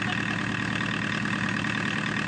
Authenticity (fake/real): real